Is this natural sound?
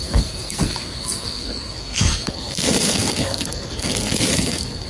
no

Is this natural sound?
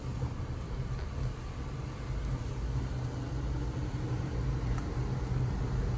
yes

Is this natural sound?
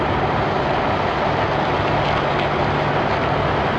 yes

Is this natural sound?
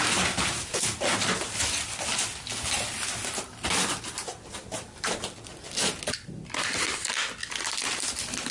yes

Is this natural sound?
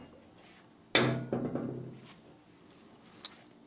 yes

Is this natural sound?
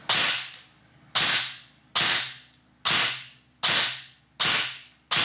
yes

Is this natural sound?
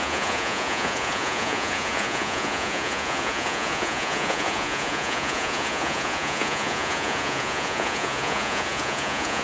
no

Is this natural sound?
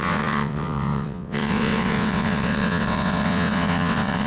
no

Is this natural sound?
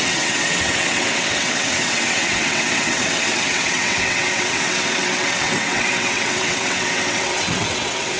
no